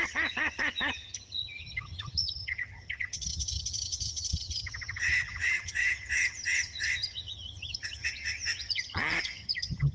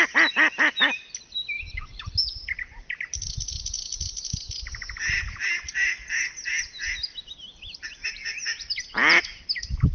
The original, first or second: second